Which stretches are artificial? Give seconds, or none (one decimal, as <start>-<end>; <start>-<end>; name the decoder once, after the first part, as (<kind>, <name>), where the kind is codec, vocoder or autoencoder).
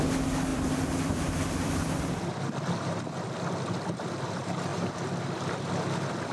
0.5-3.1 (vocoder, BigVGAN v2); 4.7-5.7